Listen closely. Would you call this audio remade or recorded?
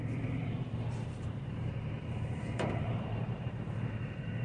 remade